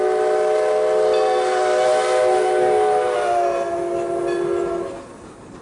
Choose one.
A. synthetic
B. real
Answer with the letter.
B